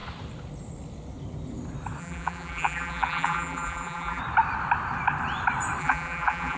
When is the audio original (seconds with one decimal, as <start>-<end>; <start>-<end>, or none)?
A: 0.0-2.0; 4.2-5.8